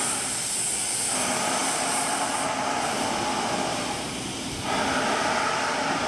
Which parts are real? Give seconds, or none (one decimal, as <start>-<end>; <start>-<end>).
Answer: 0.0-1.6; 2.6-3.7; 4.8-6.1

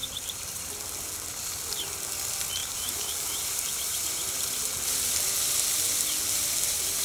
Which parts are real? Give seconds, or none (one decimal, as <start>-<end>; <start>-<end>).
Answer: 0.7-2.6; 4.3-7.0

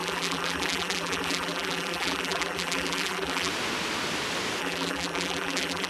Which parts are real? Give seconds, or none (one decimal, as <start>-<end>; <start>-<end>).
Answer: 3.5-4.6

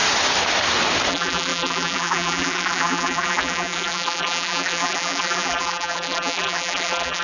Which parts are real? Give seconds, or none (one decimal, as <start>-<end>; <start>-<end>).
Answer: 0.0-1.1

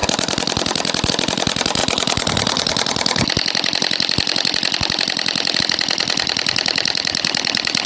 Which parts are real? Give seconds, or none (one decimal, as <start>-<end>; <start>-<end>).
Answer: 1.1-7.9

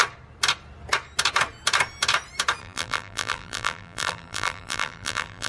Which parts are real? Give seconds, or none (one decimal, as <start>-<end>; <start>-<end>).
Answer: 0.0-2.6

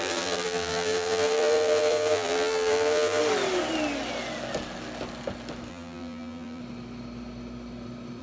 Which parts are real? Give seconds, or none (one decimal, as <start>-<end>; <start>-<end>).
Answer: 3.2-5.7; 6.6-8.2

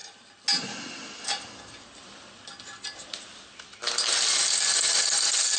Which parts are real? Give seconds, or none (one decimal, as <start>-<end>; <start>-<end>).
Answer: 0.0-5.6